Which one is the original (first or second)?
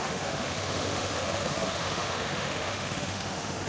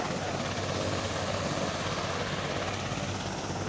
second